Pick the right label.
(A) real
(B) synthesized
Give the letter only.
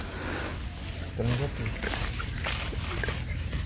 A